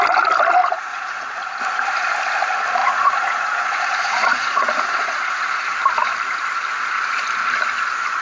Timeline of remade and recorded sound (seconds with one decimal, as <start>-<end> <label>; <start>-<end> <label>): 0.0-0.6 recorded; 0.6-1.6 remade; 1.6-2.8 recorded; 2.8-5.6 remade; 5.6-8.2 recorded